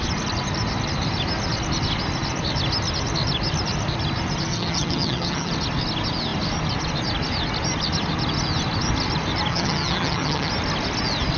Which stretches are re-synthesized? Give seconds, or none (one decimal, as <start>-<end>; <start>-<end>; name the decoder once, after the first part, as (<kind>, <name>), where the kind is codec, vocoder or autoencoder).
4.5-5.5 (vocoder, HiFi-GAN); 9.5-10.5